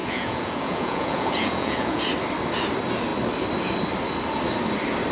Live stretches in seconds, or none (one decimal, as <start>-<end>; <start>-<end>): 2.0-5.1